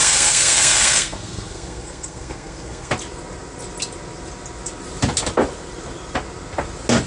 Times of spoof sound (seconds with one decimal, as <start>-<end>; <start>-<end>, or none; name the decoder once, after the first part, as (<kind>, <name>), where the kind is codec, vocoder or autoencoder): 0.0-2.9 (codec, SNAC)